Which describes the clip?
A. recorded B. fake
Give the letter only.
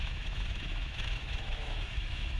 B